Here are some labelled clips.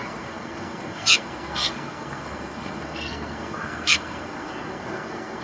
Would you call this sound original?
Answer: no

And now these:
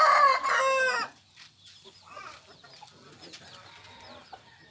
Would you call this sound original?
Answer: yes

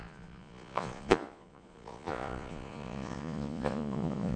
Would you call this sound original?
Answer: no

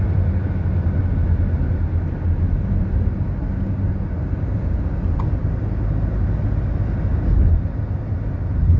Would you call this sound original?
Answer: yes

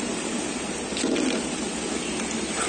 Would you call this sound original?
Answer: yes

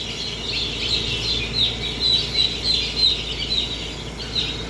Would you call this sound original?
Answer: yes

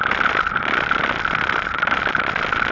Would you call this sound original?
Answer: yes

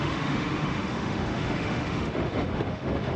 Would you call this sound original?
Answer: no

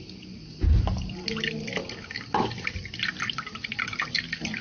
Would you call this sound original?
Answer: yes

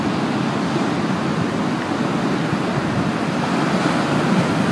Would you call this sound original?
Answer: yes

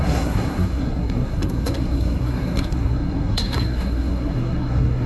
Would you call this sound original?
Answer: no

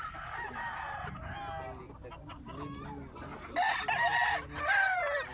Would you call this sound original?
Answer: yes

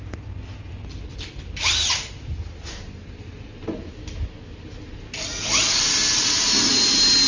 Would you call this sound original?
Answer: yes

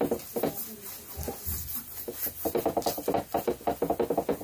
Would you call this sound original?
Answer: yes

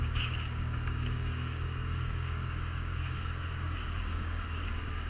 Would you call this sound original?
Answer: no